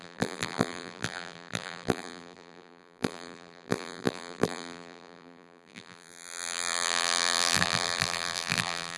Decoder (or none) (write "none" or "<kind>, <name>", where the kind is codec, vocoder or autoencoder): vocoder, BigVGAN v2